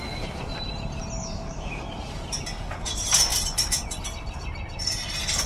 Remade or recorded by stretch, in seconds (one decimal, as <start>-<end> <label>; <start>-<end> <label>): 0.0-1.2 recorded; 1.2-1.8 remade; 1.8-5.5 recorded